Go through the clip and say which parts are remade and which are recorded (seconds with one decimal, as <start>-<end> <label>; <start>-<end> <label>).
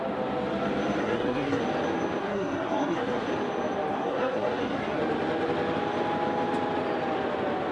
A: 0.0-1.0 recorded; 1.0-1.6 remade; 1.6-2.2 recorded; 2.2-3.3 remade; 3.3-3.9 recorded; 3.9-5.0 remade; 5.0-7.7 recorded